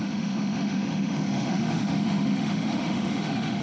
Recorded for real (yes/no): no